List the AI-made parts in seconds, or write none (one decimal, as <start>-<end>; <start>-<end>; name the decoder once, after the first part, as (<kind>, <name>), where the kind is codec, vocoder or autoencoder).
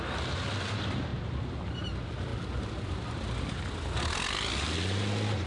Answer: none